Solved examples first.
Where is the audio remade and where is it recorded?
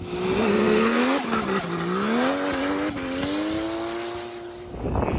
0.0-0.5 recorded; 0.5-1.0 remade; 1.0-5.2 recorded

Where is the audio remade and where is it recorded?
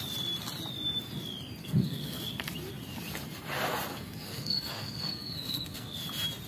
0.0-1.6 recorded; 1.6-2.2 remade; 2.2-3.9 recorded; 3.9-6.0 remade; 6.0-6.5 recorded